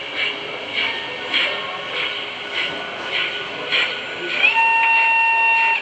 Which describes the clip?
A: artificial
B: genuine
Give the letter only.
B